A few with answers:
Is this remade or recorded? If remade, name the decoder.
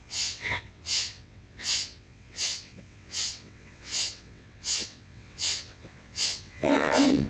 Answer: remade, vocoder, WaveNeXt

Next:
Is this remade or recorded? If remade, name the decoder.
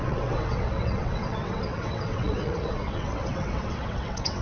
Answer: remade, vocoder, WaveNeXt